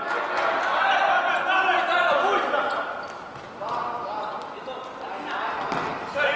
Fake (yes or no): no